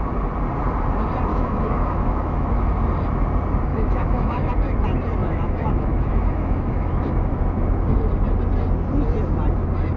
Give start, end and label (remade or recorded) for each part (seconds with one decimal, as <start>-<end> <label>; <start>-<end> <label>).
0.0-1.3 recorded; 1.3-2.7 remade; 2.7-3.7 recorded; 3.7-4.5 remade; 4.5-5.2 recorded; 5.2-7.4 remade; 7.4-10.0 recorded